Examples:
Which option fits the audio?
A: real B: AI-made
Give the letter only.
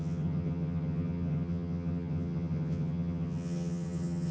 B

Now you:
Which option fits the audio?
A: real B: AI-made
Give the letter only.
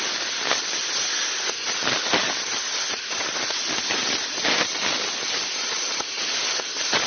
A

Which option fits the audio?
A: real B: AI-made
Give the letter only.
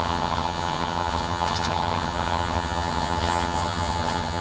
B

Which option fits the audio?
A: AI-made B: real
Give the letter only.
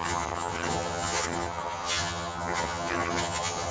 A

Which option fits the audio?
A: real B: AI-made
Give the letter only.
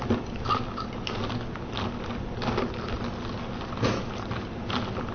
A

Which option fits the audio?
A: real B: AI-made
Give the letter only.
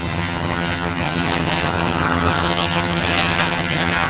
B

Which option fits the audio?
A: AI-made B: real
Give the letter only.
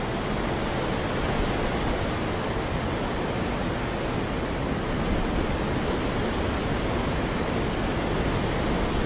B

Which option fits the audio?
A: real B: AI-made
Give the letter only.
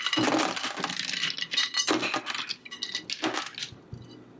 A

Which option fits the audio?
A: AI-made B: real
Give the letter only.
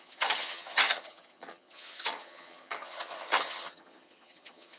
A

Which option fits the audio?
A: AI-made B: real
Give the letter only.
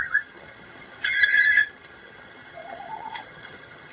A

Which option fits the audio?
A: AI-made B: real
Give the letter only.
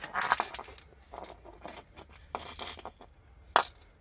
B